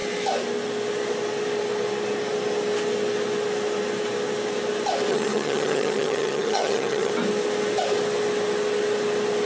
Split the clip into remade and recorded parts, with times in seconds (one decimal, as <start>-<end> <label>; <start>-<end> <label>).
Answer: 0.0-5.1 recorded; 5.1-7.1 remade; 7.1-9.5 recorded